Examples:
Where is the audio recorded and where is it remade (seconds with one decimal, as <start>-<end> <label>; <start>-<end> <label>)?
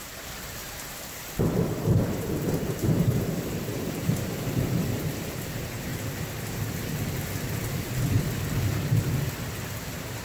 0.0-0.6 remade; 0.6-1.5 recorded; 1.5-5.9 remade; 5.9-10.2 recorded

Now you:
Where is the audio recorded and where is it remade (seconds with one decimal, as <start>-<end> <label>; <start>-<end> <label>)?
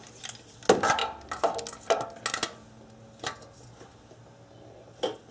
0.0-5.3 recorded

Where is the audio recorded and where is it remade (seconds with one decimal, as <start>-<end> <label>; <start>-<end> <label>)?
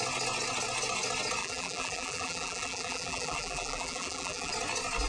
0.0-1.4 recorded; 1.4-4.5 remade; 4.5-5.1 recorded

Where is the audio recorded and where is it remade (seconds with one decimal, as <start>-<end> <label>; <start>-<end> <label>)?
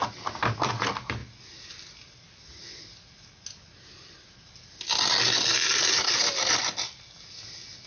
0.0-7.9 recorded